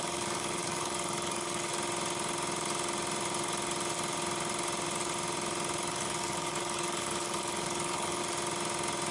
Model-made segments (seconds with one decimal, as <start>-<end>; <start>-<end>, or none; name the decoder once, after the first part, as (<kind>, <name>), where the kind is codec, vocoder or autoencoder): 0.0-1.7 (codec, DAC); 5.9-8.2